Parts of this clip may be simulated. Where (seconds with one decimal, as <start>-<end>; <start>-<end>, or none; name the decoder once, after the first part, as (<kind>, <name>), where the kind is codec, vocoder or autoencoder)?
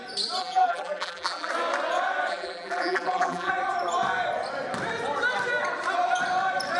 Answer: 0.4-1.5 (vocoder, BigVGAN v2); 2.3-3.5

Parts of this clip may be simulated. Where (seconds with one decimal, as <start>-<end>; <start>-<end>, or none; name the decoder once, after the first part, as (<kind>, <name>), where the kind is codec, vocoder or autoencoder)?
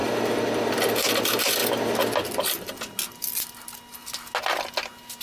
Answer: none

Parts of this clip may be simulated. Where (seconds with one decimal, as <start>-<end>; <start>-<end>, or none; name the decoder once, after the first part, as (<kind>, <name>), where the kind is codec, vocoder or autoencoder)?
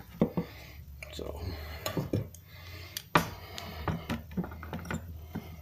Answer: 0.8-1.4 (vocoder, BigVGAN v2); 1.8-2.3; 3.7-5.6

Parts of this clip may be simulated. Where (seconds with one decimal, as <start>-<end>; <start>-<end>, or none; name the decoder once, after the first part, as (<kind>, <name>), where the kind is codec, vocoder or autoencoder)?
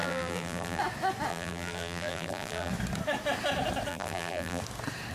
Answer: 0.0-0.8 (vocoder, BigVGAN v2); 1.3-2.7; 3.9-4.6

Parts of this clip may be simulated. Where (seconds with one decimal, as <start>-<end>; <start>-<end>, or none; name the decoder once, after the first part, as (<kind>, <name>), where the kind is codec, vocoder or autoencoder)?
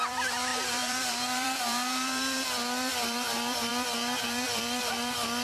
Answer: 0.0-3.7 (vocoder, BigVGAN v2); 4.2-5.4